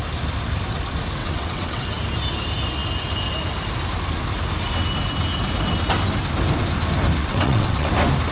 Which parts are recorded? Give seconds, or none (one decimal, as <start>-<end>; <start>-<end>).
0.0-1.2; 1.8-7.2; 7.9-8.3